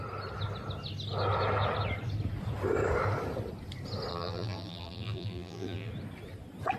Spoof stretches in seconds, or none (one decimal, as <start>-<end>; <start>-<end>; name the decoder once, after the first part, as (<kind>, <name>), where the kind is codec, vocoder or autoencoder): 4.1-5.9 (vocoder, BigVGAN v2)